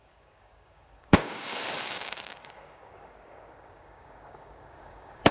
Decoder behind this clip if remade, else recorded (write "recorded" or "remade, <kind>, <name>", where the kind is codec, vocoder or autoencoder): remade, codec, DAC